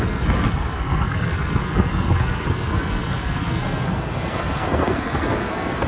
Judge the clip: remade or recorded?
remade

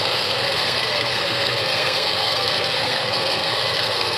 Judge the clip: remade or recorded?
remade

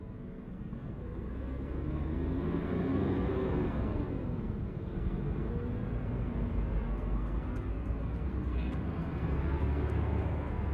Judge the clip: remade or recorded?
remade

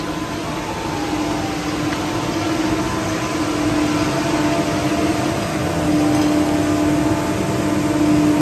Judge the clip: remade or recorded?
recorded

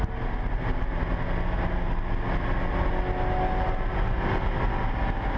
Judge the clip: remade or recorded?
recorded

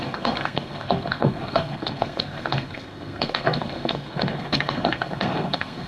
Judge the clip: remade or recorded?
remade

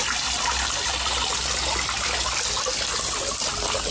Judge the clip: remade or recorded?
recorded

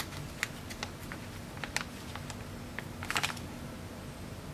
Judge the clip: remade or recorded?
recorded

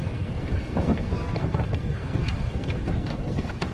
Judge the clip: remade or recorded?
remade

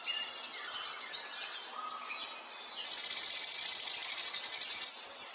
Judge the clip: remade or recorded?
recorded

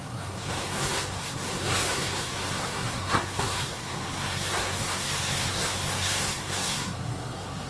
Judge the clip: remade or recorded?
remade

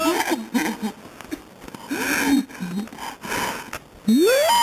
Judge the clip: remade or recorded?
recorded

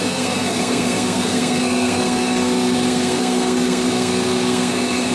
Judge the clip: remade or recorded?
remade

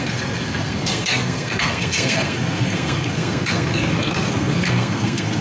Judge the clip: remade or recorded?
remade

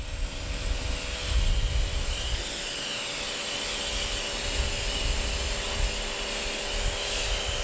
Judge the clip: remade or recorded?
recorded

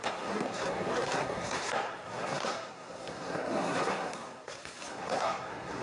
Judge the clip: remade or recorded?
remade